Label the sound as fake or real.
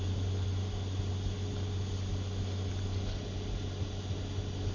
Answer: real